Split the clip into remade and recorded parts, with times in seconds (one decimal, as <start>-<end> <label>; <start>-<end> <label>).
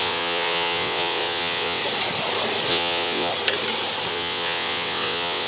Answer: 0.0-1.8 remade; 1.8-2.7 recorded; 2.7-3.3 remade; 3.3-4.1 recorded; 4.1-5.5 remade